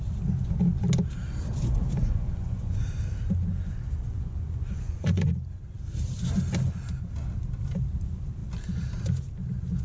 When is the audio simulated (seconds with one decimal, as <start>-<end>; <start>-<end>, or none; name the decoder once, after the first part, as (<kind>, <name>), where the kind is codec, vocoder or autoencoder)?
2.0-2.8 (vocoder, Vocos); 3.5-5.3